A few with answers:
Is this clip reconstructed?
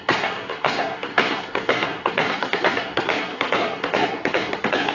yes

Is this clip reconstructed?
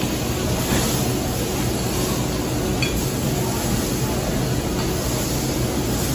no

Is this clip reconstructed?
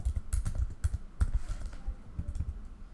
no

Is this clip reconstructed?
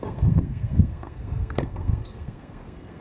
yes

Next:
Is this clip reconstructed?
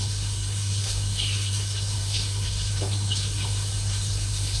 yes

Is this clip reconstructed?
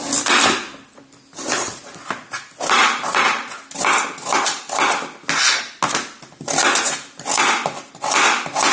no